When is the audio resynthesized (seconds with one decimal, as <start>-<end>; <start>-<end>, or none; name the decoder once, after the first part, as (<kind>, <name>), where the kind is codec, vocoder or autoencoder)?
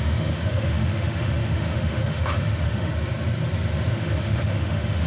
0.0-2.9 (autoencoder, DAC-VAE); 3.9-5.1